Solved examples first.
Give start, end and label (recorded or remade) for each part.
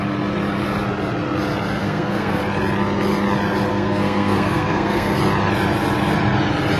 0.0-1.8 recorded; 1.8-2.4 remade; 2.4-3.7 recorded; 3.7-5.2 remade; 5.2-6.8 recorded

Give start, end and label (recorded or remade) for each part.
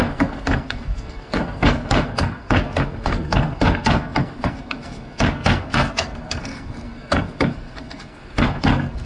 0.0-9.1 remade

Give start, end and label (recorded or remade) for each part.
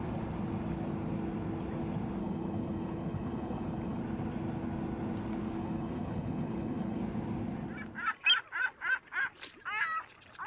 0.0-2.2 recorded; 2.2-4.0 remade; 4.0-5.6 recorded; 5.6-7.0 remade; 7.0-10.5 recorded